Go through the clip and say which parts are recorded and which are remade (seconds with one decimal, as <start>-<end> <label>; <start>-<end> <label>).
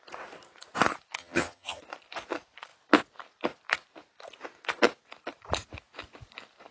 0.0-1.2 recorded; 1.2-1.8 remade; 1.8-6.7 recorded